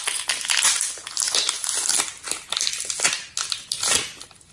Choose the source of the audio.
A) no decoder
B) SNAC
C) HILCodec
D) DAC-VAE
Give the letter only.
A